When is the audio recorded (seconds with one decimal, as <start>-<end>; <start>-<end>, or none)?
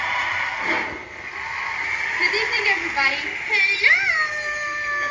0.0-5.1